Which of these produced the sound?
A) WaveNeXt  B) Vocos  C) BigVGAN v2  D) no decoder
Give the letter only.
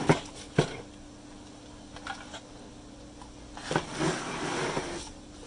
D